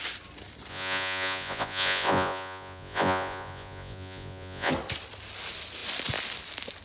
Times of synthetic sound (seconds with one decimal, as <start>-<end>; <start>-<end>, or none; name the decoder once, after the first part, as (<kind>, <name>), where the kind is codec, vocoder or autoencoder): 0.7-4.7 (vocoder, Vocos)